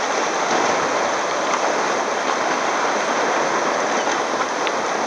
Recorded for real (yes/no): yes